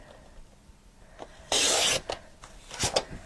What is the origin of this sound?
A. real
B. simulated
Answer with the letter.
A